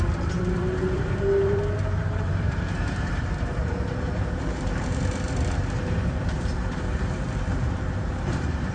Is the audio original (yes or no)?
no